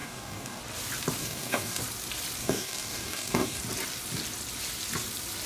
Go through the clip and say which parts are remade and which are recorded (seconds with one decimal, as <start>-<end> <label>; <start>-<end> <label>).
0.0-0.6 remade; 0.6-1.2 recorded; 1.2-1.8 remade; 1.8-2.4 recorded; 2.4-3.6 remade; 3.6-5.5 recorded